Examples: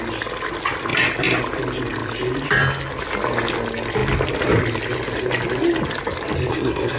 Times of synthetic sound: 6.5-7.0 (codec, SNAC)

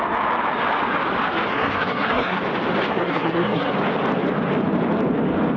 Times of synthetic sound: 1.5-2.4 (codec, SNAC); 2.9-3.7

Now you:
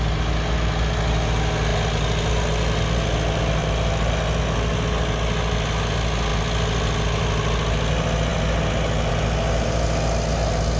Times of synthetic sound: 3.6-4.1 (vocoder, BigVGAN v2)

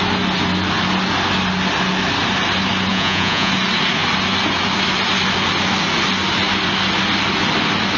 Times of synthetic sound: 2.9-3.5 (vocoder, Vocos)

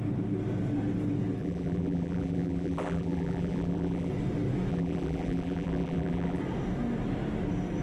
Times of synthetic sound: 1.4-4.1 (vocoder, BigVGAN v2); 4.7-6.4

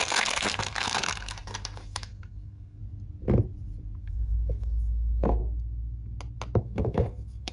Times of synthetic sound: 0.0-2.8 (codec, SNAC); 4.0-5.4; 6.6-7.5